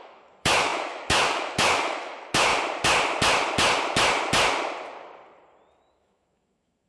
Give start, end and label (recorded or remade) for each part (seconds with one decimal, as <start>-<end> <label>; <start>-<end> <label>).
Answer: 0.0-2.5 remade; 2.5-5.9 recorded; 5.9-6.9 remade